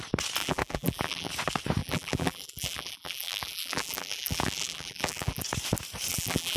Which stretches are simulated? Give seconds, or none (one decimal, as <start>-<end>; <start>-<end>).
0.4-1.3; 1.8-5.4; 6.1-6.6